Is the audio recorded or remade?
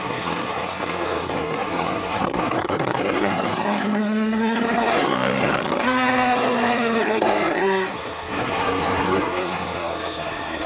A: remade